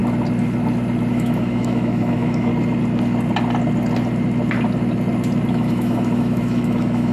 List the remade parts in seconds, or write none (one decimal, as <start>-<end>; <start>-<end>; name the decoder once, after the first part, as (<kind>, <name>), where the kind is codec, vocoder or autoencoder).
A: 1.1-2.5 (autoencoder, DAC-VAE); 5.5-7.1